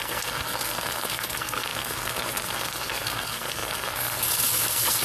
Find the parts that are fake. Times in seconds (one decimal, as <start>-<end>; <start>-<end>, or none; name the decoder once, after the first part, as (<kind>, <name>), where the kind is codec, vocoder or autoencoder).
0.0-5.0 (codec, SNAC)